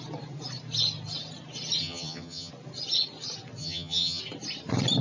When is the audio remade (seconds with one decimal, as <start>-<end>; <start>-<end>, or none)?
1.8-2.5; 3.6-4.2